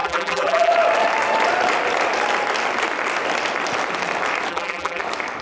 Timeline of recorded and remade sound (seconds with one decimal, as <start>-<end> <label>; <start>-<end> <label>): 0.0-0.7 remade; 0.7-4.5 recorded; 4.5-5.0 remade; 5.0-5.4 recorded